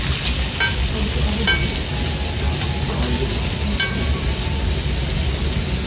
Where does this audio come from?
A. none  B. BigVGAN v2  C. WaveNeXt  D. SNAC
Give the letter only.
A